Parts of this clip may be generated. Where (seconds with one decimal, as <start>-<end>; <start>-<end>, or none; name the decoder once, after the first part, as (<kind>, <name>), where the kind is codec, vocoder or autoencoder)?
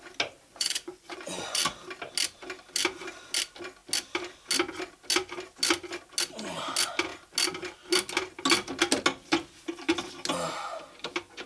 0.5-1.6 (vocoder, Vocos)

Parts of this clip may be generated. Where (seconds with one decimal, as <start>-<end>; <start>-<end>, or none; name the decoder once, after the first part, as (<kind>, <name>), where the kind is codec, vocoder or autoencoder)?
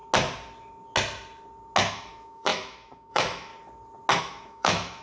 1.9-3.5 (autoencoder, DAC-VAE); 4.2-5.0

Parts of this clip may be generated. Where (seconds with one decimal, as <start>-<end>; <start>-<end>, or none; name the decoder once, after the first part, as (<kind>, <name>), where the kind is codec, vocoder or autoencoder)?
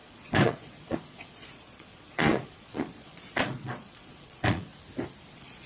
0.0-4.7 (vocoder, Vocos); 5.3-5.7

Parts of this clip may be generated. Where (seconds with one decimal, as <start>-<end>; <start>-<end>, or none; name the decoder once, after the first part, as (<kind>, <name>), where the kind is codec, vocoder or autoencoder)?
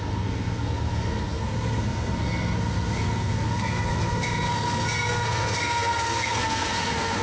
0.0-7.2 (codec, SNAC)